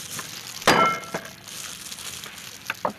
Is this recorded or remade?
recorded